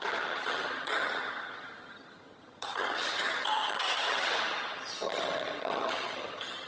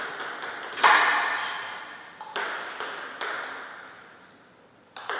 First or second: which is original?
second